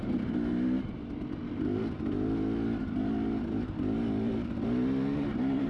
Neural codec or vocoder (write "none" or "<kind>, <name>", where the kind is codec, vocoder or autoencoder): none